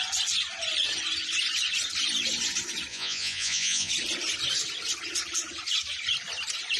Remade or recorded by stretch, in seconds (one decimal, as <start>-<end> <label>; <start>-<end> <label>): 0.0-2.9 recorded; 2.9-3.9 remade; 3.9-6.8 recorded